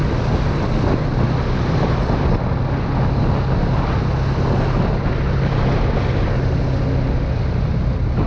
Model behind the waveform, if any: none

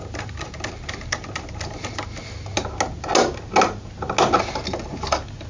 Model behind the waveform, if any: none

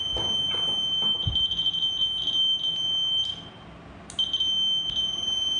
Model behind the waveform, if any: none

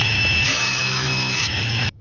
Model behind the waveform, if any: autoencoder, DAC-VAE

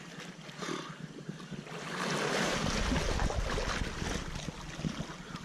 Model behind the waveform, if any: none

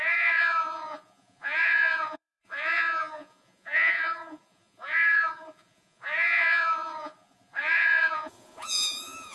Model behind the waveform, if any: vocoder, Vocos